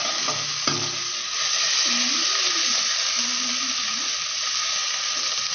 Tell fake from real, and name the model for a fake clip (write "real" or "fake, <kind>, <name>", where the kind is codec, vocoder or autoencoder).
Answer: real